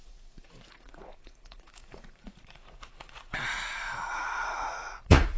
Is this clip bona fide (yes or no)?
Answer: no